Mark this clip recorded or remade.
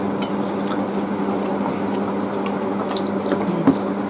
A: recorded